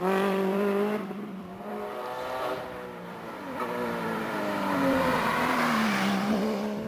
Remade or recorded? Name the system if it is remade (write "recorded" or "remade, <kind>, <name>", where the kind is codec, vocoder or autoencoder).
remade, vocoder, BigVGAN v2